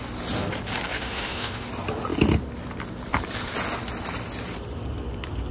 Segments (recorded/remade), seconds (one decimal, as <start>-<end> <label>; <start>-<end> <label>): 0.0-0.9 recorded; 0.9-1.7 remade; 1.7-5.5 recorded